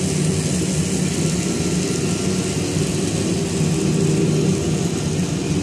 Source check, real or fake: real